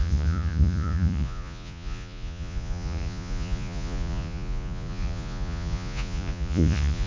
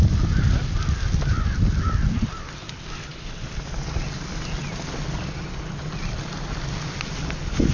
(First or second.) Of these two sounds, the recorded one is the second